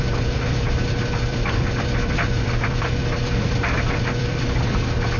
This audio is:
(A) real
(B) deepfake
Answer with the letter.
B